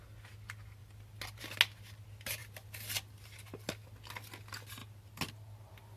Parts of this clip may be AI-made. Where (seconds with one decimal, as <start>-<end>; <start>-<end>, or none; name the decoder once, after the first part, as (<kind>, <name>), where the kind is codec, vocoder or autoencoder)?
none

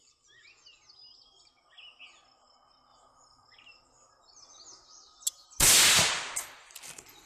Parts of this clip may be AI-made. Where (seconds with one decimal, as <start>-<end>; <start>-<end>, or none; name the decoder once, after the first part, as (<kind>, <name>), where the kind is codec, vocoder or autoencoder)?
none

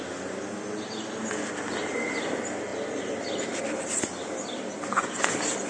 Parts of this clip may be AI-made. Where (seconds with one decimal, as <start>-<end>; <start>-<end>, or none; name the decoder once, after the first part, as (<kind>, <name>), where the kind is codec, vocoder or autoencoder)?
none

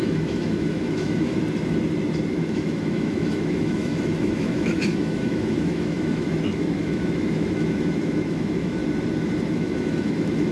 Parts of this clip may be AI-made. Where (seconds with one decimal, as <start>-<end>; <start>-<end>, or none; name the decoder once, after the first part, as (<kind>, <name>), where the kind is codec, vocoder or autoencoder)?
0.0-1.4 (autoencoder, DAC-VAE); 2.3-8.8; 9.5-10.5